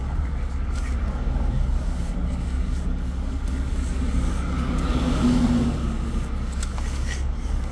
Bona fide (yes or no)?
no